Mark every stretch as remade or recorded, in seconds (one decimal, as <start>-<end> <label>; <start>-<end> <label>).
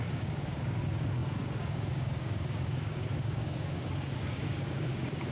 0.0-5.3 remade